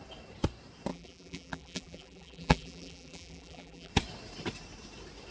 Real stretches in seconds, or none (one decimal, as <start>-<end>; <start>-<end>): 0.0-0.9; 3.9-5.3